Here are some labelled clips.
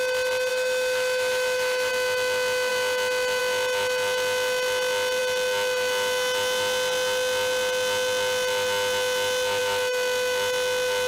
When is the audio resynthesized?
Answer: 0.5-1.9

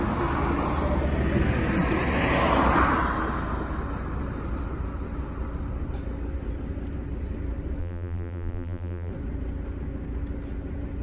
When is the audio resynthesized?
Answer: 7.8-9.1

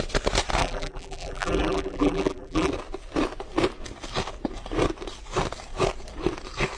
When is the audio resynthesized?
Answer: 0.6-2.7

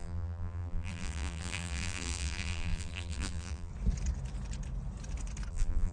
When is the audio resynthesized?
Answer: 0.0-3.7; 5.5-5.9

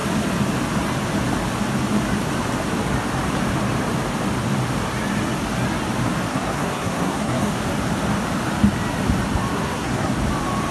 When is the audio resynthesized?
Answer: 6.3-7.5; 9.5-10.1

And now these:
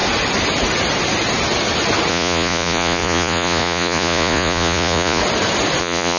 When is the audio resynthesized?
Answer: 2.1-5.2; 5.8-6.2

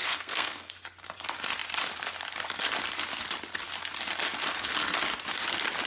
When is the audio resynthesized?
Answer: 0.0-0.7

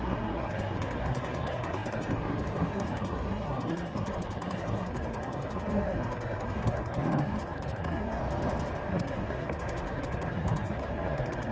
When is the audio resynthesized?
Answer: 0.0-8.2; 8.9-11.5